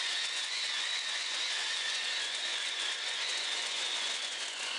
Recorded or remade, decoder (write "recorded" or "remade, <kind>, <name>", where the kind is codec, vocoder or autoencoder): remade, vocoder, Vocos